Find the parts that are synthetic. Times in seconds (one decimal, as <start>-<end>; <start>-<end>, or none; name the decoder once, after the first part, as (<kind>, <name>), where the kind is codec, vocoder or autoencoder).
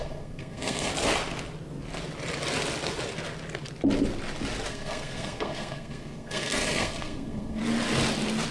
0.0-0.9 (codec, SNAC); 4.7-7.6